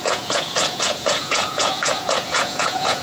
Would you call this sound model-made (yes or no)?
yes